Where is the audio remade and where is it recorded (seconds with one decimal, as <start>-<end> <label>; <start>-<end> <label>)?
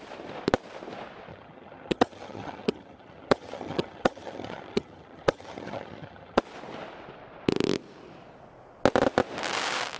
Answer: 0.0-1.3 recorded; 1.3-6.4 remade; 6.4-10.0 recorded